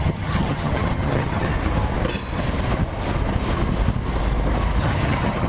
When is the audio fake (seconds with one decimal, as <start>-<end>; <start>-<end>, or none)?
0.0-1.5; 4.8-5.5